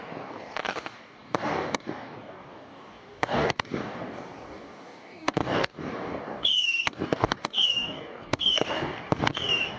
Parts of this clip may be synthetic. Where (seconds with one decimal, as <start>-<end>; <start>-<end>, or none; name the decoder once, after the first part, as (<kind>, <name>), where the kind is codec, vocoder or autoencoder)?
0.0-9.8 (codec, DAC)